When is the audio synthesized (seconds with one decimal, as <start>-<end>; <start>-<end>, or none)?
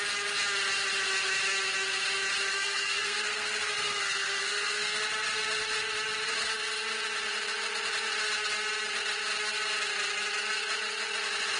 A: 2.5-5.0